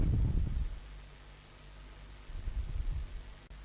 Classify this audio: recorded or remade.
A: recorded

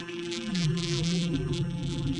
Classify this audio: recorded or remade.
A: remade